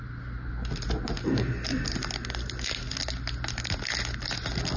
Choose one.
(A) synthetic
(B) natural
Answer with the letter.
B